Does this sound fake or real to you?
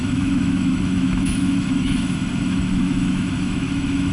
fake